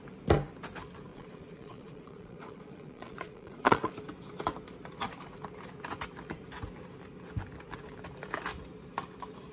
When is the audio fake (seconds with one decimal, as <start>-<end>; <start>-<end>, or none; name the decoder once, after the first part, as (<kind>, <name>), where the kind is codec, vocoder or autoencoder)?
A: 1.1-3.9 (vocoder, Vocos)